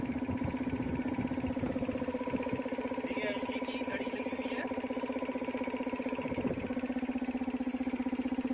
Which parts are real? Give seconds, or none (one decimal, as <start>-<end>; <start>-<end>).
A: 0.0-8.5